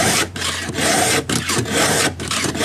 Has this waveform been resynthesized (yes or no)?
yes